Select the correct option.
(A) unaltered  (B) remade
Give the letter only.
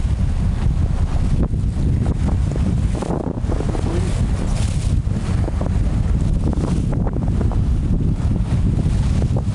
A